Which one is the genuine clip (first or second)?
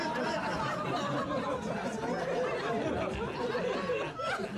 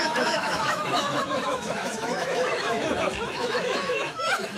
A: first